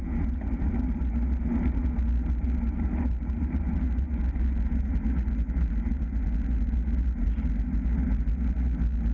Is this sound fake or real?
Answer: real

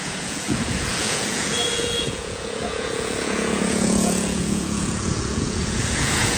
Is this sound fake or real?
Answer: fake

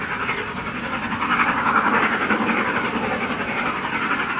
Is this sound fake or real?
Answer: real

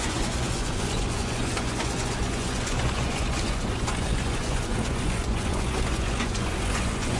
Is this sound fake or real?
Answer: fake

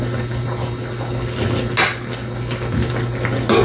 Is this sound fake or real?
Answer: real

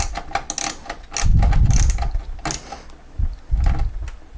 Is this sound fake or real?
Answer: real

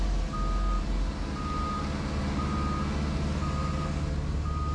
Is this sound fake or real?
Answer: real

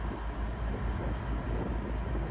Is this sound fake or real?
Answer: real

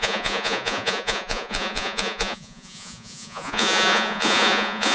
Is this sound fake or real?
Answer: fake